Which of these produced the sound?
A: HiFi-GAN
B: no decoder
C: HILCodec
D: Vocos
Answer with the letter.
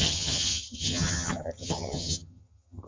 A